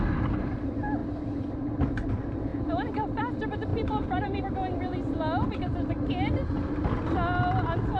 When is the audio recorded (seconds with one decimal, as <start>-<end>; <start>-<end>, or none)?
0.0-1.0; 2.1-2.5; 3.2-3.7; 4.4-8.0

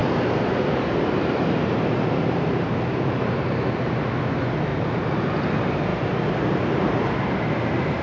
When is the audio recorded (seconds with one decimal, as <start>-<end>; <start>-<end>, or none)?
3.8-4.7; 5.3-5.9; 7.5-8.0

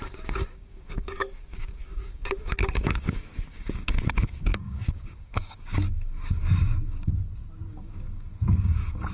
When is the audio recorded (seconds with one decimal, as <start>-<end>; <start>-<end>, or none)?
7.1-7.7

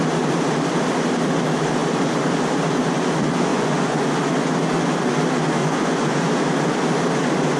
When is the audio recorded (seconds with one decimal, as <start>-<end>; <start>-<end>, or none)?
0.0-3.5; 4.0-5.6; 6.3-7.6

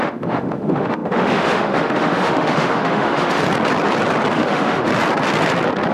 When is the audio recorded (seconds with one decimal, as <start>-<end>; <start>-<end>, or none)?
3.4-4.3; 4.9-5.9